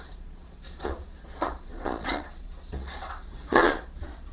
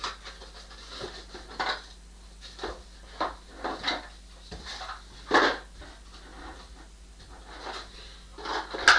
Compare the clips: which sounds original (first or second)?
second